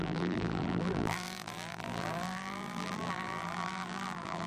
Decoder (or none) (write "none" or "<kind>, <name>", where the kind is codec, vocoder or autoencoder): vocoder, BigVGAN v2